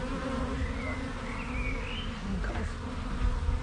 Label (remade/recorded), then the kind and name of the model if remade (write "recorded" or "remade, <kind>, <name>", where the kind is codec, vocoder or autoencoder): recorded